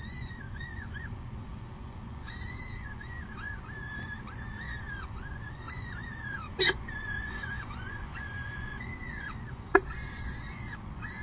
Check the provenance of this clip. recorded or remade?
remade